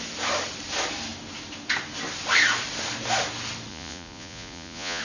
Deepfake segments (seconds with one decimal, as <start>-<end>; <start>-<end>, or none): 3.7-5.0